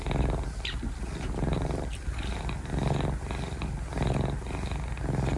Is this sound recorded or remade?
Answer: recorded